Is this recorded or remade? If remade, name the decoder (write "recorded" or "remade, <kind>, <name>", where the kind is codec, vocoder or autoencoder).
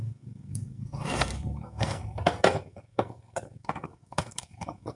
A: remade, codec, SNAC